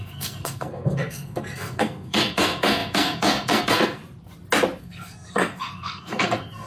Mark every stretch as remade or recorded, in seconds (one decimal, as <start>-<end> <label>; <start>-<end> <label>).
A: 0.0-4.0 remade; 4.0-4.8 recorded; 4.8-6.7 remade